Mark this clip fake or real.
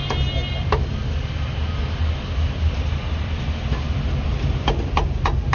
real